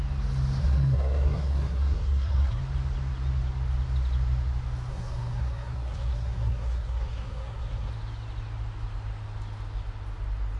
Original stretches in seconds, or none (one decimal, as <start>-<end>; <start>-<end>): 0.0-0.6; 2.6-4.9; 7.9-10.6